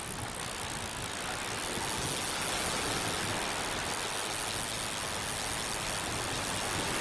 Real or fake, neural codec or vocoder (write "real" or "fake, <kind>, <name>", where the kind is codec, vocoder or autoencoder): real